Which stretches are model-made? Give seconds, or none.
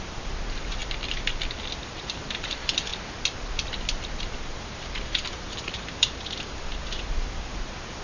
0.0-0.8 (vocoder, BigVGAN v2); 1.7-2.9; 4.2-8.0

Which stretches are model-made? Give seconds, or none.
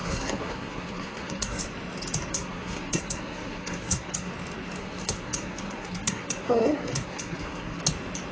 0.0-1.6 (codec, SNAC); 2.3-4.3; 4.8-7.8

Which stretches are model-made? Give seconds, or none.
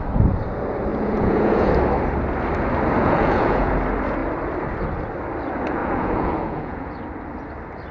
0.9-1.7 (vocoder, Vocos); 3.0-3.7; 5.8-6.9